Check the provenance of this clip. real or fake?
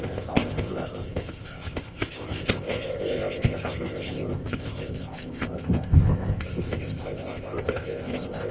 fake